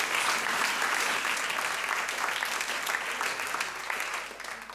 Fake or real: real